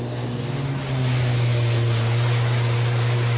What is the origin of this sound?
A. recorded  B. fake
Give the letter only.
A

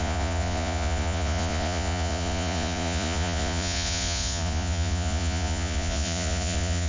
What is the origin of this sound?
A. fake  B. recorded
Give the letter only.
A